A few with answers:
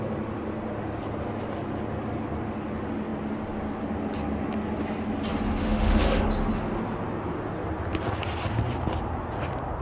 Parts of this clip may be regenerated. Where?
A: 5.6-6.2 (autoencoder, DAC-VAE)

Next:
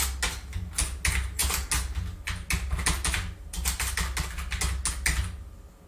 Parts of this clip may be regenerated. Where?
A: none

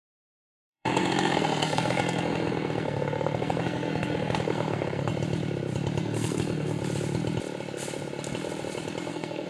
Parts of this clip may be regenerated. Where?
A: 0.0-5.1 (codec, SNAC); 6.0-6.8; 9.1-9.5

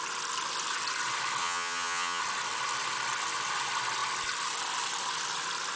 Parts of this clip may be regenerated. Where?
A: 1.4-2.2 (vocoder, HiFi-GAN)

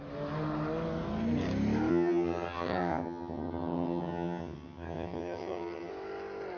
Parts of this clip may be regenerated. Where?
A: 1.9-5.9 (vocoder, HiFi-GAN)

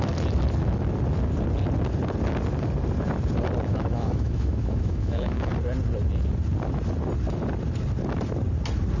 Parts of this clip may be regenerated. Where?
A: 3.7-5.5 (autoencoder, DAC-VAE)